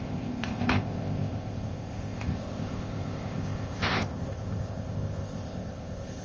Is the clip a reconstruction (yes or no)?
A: yes